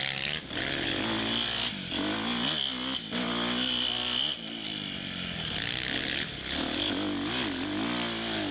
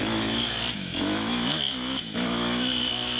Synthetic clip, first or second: second